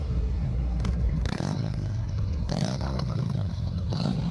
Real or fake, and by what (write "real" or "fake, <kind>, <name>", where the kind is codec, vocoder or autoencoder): fake, codec, SNAC